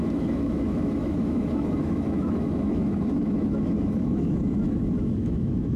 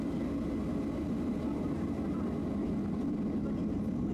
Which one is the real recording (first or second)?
second